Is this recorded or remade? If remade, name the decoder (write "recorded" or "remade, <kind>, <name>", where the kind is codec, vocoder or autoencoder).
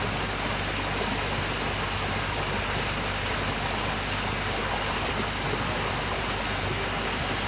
recorded